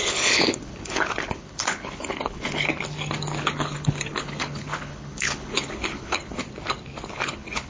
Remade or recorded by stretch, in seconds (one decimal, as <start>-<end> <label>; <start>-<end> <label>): 0.0-2.7 remade; 2.7-3.4 recorded; 3.4-6.4 remade; 6.4-7.1 recorded; 7.1-7.7 remade